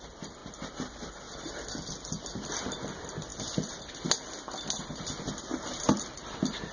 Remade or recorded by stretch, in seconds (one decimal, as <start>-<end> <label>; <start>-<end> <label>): 0.0-6.7 recorded